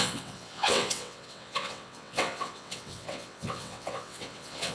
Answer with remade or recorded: remade